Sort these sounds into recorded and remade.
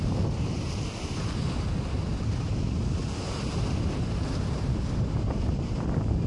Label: recorded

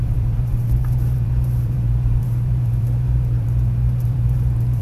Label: remade